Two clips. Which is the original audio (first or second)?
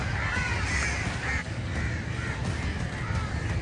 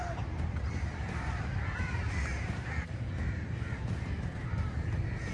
first